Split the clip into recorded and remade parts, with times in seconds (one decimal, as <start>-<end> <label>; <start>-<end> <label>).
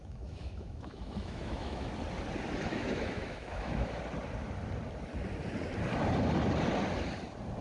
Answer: 0.0-1.9 remade; 1.9-2.7 recorded; 2.7-4.0 remade; 4.0-7.6 recorded